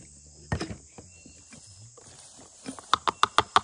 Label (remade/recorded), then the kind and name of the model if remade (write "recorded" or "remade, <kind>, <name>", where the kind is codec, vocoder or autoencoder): recorded